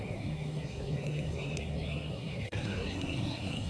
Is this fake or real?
fake